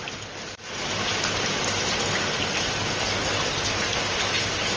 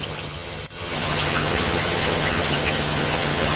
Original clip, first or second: first